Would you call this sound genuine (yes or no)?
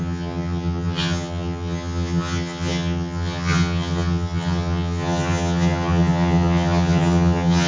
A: no